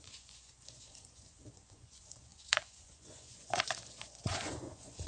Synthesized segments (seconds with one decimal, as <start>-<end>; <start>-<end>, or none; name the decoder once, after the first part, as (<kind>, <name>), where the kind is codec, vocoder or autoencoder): 0.0-5.1 (vocoder, Vocos)